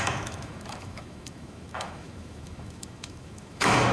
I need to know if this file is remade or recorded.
remade